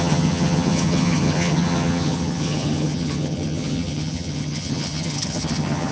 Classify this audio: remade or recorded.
remade